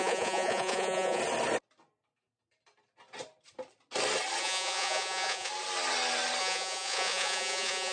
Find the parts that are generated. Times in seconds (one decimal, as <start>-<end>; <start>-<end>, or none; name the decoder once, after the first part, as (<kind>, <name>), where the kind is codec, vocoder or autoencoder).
0.0-1.2 (vocoder, Vocos); 4.4-5.5; 6.4-7.9